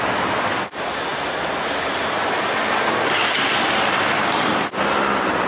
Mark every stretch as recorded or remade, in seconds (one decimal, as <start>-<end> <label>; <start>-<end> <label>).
0.0-5.5 recorded